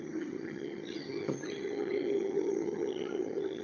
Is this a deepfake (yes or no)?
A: yes